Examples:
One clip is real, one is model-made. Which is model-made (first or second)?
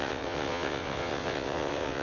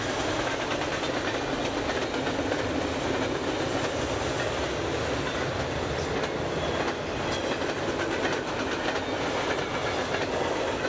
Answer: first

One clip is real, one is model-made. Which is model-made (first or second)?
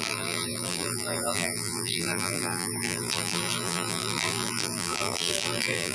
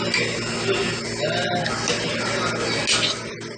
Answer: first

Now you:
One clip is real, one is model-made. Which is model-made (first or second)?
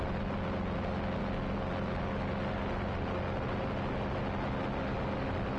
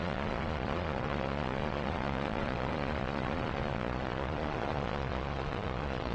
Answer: second